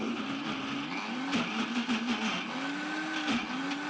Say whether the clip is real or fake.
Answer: real